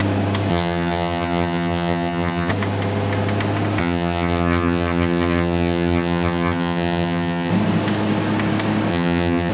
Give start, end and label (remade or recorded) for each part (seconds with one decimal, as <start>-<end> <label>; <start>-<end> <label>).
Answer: 0.0-0.5 recorded; 0.5-2.5 remade; 2.5-3.8 recorded; 3.8-7.5 remade; 7.5-8.9 recorded; 8.9-9.5 remade